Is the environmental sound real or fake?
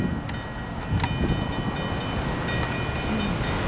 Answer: real